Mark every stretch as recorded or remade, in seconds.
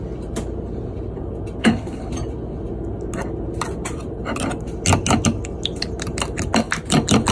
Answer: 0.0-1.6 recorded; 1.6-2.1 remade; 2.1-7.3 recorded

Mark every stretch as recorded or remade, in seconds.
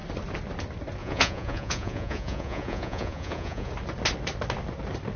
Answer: 0.0-1.0 recorded; 1.0-3.7 remade; 3.7-5.2 recorded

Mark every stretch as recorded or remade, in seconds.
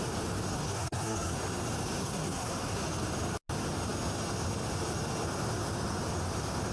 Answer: 0.0-0.5 recorded; 0.5-1.4 remade; 1.4-2.0 recorded; 2.0-2.8 remade; 2.8-6.7 recorded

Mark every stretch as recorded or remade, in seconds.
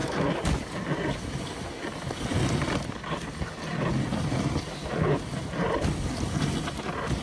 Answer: 0.0-0.6 remade; 0.6-7.2 recorded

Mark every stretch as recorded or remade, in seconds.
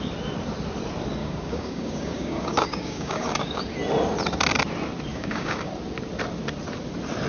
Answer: 0.0-1.2 recorded; 1.2-3.6 remade; 3.6-5.1 recorded; 5.1-5.7 remade; 5.7-7.3 recorded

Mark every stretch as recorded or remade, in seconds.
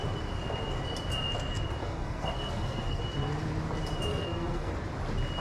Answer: 0.0-1.8 recorded; 1.8-3.0 remade; 3.0-4.1 recorded; 4.1-4.7 remade; 4.7-5.4 recorded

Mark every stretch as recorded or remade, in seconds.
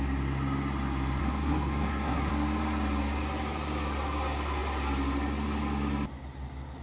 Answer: 0.0-1.2 recorded; 1.2-2.3 remade; 2.3-6.8 recorded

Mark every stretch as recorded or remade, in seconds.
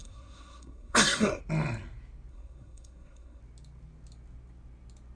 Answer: 0.0-1.4 remade; 1.4-2.3 recorded; 2.3-3.4 remade; 3.4-5.2 recorded